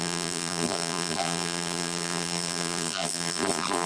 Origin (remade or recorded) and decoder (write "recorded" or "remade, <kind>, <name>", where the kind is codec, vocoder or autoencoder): remade, vocoder, BigVGAN v2